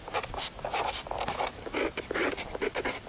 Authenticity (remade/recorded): recorded